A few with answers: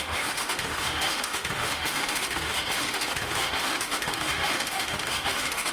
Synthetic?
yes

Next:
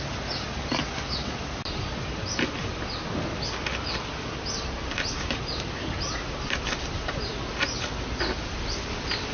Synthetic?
no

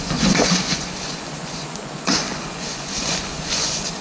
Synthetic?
yes